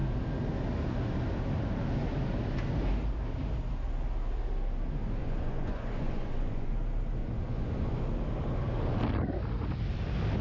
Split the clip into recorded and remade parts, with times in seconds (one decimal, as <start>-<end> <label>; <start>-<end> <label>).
0.0-5.2 recorded; 5.2-6.7 remade; 6.7-7.2 recorded; 7.2-8.0 remade; 8.0-10.4 recorded